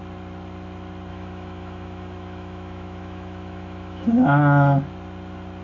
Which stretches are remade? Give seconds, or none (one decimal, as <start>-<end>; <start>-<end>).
1.1-4.4